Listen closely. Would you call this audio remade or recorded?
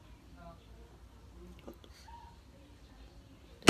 recorded